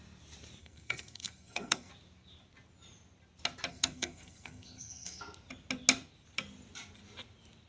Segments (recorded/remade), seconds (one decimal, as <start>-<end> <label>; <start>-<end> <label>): 0.0-0.6 recorded; 0.6-1.9 remade; 1.9-3.7 recorded; 3.7-5.2 remade; 5.2-7.7 recorded

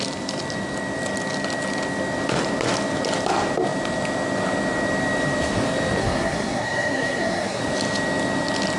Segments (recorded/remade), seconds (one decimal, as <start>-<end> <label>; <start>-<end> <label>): 0.0-6.0 recorded; 6.0-7.6 remade; 7.6-8.8 recorded

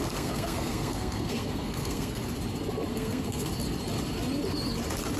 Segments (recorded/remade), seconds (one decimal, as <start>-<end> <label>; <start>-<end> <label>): 0.0-2.2 remade; 2.2-2.9 recorded; 2.9-3.5 remade; 3.5-5.2 recorded

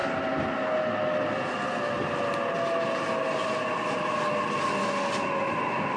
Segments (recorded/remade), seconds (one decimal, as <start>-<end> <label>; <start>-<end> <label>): 0.0-6.0 recorded

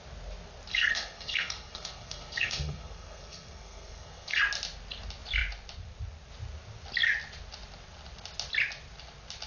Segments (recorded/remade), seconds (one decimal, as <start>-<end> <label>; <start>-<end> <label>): 0.0-0.7 recorded; 0.7-4.4 remade; 4.4-9.5 recorded

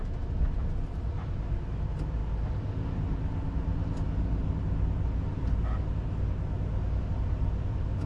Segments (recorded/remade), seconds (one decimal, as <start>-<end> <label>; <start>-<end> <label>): 0.0-8.1 recorded

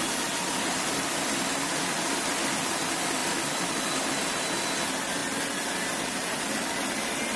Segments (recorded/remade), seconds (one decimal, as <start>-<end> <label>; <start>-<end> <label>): 0.0-7.4 recorded

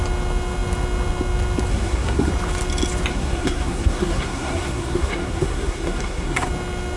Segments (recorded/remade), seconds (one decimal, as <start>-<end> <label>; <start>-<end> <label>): 0.0-1.7 recorded; 1.7-2.3 remade; 2.3-3.1 recorded; 3.1-6.5 remade; 6.5-7.0 recorded